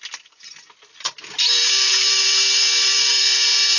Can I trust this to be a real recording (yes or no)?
yes